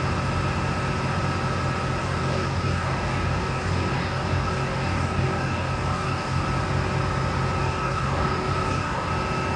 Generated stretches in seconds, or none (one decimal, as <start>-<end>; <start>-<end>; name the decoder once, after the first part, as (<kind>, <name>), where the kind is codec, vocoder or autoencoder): 2.0-6.4 (codec, DAC); 7.6-9.1